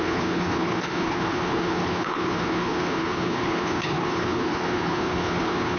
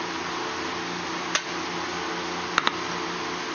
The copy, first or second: first